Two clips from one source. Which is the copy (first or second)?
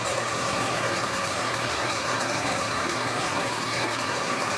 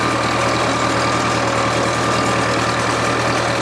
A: first